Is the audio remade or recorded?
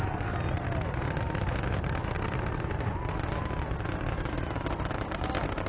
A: recorded